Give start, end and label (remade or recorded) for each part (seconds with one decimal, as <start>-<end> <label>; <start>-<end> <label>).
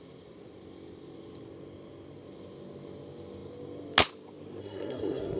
0.0-4.6 recorded; 4.6-5.4 remade